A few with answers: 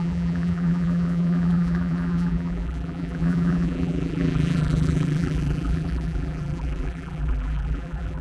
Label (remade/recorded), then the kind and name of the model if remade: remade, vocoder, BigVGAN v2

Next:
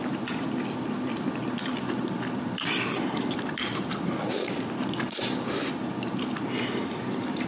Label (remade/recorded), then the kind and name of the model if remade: remade, vocoder, BigVGAN v2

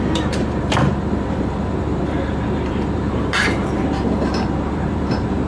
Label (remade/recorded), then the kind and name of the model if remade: remade, vocoder, BigVGAN v2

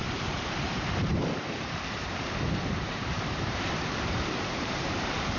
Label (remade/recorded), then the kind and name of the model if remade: remade, vocoder, BigVGAN v2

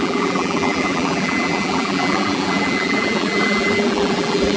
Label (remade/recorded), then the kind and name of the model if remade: remade, vocoder, BigVGAN v2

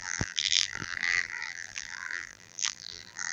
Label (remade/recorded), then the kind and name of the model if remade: remade, vocoder, BigVGAN v2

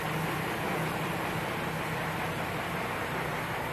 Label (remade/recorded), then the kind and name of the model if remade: remade, vocoder, BigVGAN v2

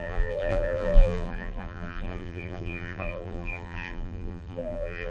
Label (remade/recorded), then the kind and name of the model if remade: remade, vocoder, BigVGAN v2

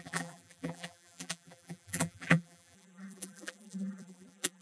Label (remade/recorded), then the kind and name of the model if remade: remade, vocoder, BigVGAN v2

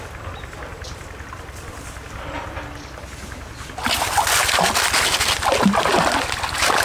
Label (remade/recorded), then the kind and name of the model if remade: recorded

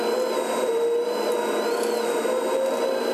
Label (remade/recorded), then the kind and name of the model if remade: recorded